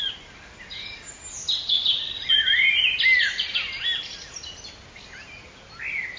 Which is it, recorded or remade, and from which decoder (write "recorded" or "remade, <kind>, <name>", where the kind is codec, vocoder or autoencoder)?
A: recorded